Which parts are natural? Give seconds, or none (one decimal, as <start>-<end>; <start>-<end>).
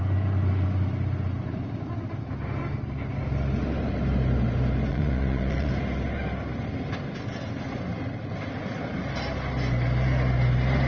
0.0-4.9; 5.7-10.9